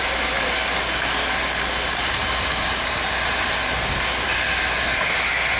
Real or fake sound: real